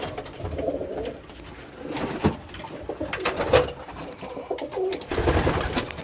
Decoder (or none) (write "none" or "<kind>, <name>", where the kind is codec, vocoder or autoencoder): none